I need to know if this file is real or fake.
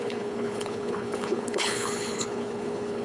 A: fake